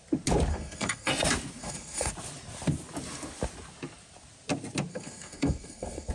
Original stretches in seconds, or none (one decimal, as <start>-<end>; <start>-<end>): 0.0-0.5; 1.1-1.6; 2.1-4.9